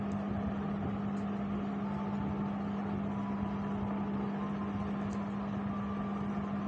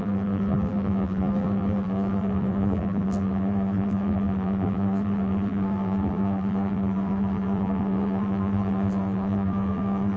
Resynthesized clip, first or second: second